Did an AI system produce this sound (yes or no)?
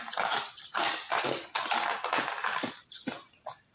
no